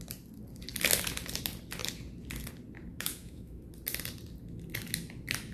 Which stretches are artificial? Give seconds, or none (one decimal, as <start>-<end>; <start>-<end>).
2.9-3.6